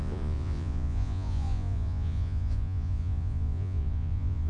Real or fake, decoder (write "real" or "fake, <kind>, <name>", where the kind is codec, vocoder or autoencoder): fake, vocoder, Vocos